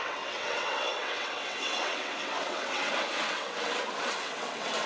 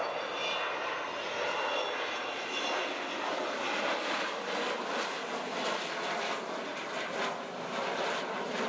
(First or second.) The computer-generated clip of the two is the first